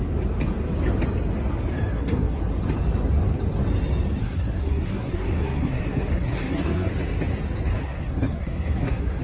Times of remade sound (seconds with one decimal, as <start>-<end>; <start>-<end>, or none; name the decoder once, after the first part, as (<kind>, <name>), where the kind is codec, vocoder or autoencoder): 1.9-2.4 (codec, SNAC); 4.2-6.9; 7.8-9.2